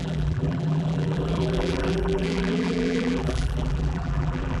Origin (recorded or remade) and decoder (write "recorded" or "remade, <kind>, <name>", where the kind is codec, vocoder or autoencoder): remade, vocoder, BigVGAN v2